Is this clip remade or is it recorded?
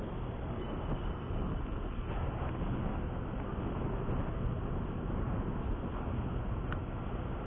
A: recorded